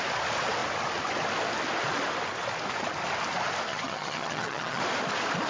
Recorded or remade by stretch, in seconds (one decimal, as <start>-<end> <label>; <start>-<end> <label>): 0.0-3.7 recorded; 3.7-4.8 remade; 4.8-5.5 recorded